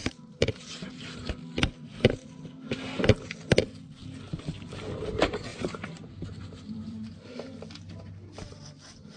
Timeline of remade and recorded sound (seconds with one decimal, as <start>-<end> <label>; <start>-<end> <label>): 0.0-1.1 remade; 1.1-1.9 recorded; 1.9-2.5 remade; 2.5-5.5 recorded; 5.5-7.1 remade; 7.1-9.2 recorded

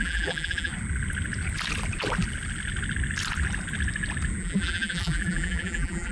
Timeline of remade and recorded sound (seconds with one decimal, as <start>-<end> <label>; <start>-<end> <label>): 0.0-0.7 remade; 0.7-4.4 recorded; 4.4-6.1 remade

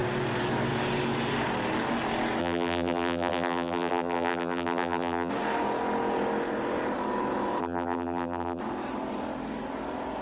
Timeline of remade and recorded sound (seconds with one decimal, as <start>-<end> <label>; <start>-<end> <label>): 0.0-2.4 recorded; 2.4-5.3 remade; 5.3-7.6 recorded; 7.6-8.6 remade; 8.6-10.2 recorded